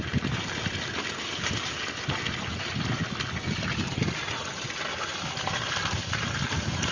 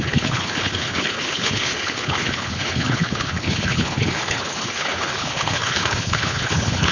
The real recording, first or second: first